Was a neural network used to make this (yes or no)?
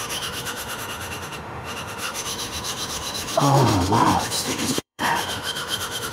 yes